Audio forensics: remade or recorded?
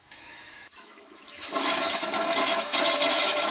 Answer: remade